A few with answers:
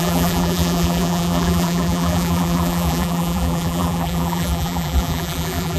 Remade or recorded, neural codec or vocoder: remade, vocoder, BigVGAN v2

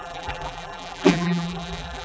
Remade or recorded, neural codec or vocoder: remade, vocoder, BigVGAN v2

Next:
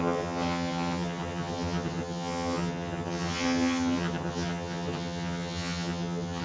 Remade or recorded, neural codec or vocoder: remade, vocoder, HiFi-GAN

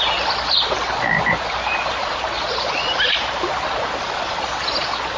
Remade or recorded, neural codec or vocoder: recorded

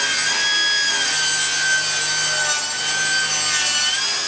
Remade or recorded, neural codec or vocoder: recorded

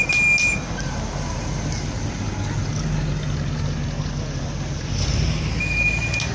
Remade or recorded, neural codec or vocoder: recorded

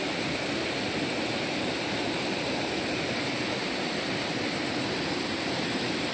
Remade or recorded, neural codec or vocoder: recorded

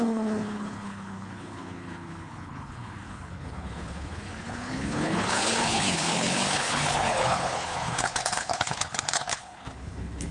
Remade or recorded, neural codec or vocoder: remade, codec, HILCodec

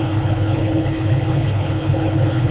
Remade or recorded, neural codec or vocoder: remade, codec, HILCodec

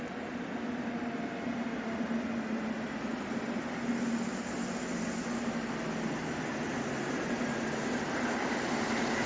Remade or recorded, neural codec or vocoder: recorded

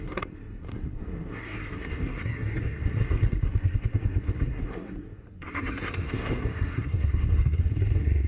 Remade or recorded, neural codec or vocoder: remade, codec, SNAC